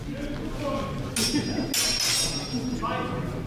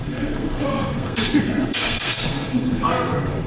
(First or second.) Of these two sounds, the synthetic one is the second